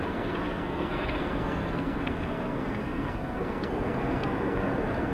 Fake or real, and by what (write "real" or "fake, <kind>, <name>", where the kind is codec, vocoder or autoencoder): fake, codec, SNAC